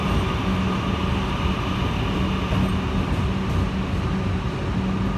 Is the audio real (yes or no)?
yes